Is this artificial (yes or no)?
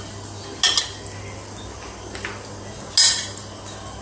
no